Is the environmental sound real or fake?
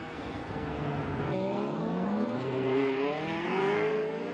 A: fake